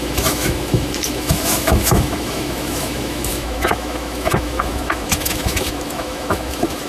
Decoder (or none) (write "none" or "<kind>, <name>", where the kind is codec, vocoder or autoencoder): autoencoder, DAC-VAE